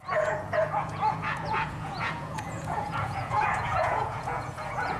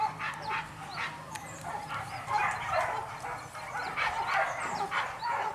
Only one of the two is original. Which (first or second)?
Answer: second